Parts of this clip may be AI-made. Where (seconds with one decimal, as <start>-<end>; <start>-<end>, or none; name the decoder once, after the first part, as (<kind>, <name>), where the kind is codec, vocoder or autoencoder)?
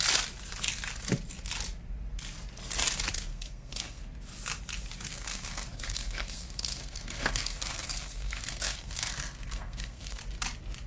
3.3-4.0 (codec, SNAC); 5.1-10.2